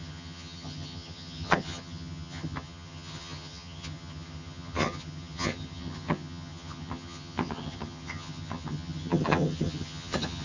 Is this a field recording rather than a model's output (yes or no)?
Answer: no